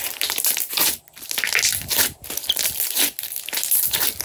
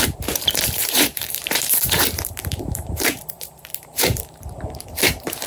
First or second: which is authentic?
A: first